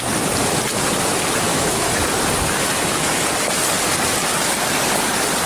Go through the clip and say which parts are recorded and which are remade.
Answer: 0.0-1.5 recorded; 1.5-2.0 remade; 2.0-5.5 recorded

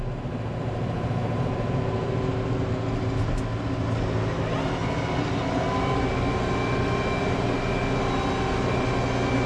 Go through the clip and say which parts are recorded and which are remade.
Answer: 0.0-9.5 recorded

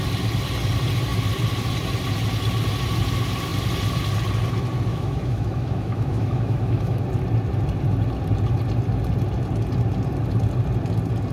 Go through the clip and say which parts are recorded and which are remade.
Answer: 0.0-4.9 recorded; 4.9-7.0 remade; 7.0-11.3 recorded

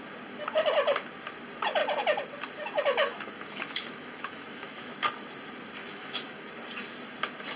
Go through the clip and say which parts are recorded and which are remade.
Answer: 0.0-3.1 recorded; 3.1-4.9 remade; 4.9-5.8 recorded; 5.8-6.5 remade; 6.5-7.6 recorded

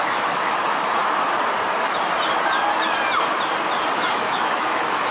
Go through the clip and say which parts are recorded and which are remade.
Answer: 0.0-1.0 remade; 1.0-4.1 recorded; 4.1-5.1 remade

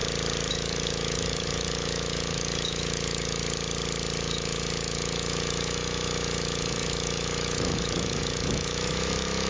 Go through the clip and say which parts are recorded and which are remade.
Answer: 0.0-0.5 recorded; 0.5-3.4 remade; 3.4-4.3 recorded; 4.3-9.5 remade

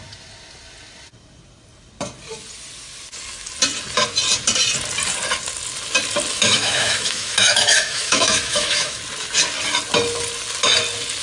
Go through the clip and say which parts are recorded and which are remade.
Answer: 0.0-6.3 recorded; 6.3-9.0 remade; 9.0-11.2 recorded